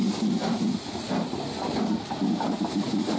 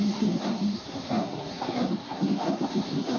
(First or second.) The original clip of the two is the first